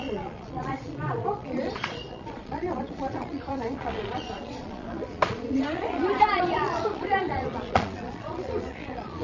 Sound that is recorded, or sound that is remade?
remade